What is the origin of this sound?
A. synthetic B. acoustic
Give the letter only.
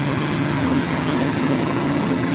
A